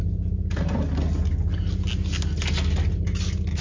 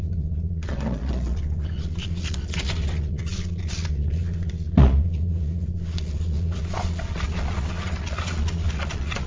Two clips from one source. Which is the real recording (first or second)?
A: first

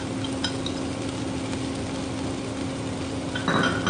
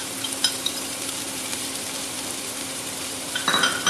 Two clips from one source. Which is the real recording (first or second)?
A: first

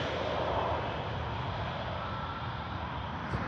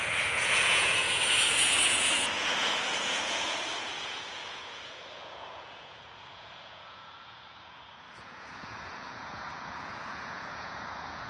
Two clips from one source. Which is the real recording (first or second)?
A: first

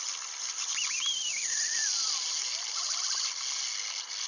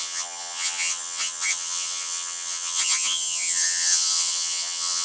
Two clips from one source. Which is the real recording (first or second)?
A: first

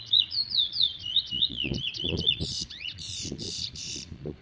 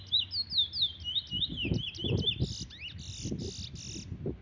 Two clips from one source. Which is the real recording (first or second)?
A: second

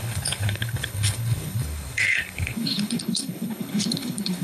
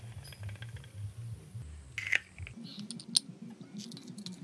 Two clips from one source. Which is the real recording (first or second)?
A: second